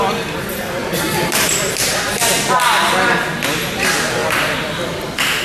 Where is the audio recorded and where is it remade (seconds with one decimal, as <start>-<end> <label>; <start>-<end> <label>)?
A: 0.0-0.8 recorded; 0.8-1.7 remade; 1.7-4.2 recorded; 4.2-4.8 remade; 4.8-5.4 recorded

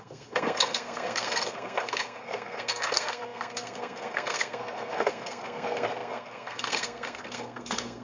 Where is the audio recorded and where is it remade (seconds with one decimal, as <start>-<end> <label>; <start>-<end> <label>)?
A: 0.0-8.0 remade

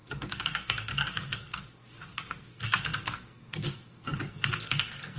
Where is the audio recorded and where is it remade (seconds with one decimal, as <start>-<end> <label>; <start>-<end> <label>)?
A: 0.0-5.2 remade

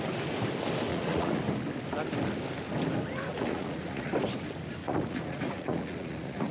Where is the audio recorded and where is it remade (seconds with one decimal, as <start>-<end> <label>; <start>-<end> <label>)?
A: 0.0-0.9 recorded; 0.9-1.4 remade; 1.4-3.3 recorded; 3.3-4.1 remade; 4.1-4.8 recorded; 4.8-6.5 remade

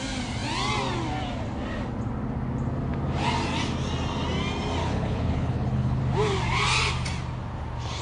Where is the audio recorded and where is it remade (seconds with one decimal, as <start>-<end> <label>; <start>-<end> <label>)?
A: 0.0-4.8 recorded; 4.8-6.0 remade; 6.0-8.0 recorded

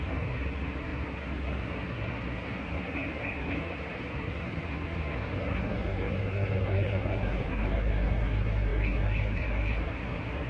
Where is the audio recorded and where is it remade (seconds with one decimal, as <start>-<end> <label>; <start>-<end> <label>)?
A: 0.0-10.5 remade